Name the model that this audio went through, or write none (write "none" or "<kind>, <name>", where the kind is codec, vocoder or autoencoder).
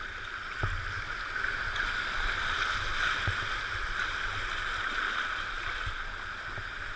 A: none